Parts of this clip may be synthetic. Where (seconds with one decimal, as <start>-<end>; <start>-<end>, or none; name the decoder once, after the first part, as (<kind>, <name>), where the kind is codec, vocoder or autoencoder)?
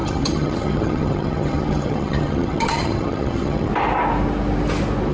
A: 0.0-3.7 (vocoder, HiFi-GAN)